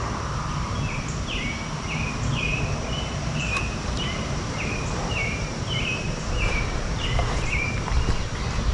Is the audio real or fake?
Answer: fake